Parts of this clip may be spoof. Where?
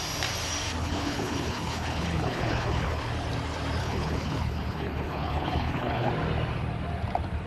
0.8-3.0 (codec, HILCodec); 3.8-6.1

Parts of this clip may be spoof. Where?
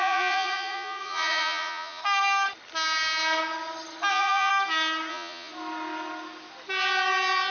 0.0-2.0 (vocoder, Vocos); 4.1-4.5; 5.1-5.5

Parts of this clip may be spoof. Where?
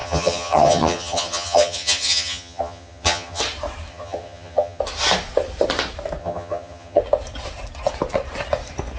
0.0-3.4 (vocoder, HiFi-GAN); 3.9-4.8; 6.2-7.0